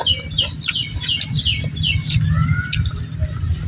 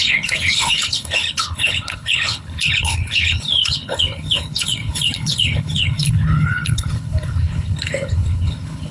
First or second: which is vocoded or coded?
second